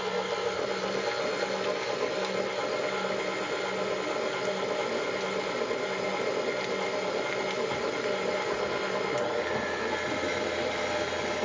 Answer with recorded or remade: recorded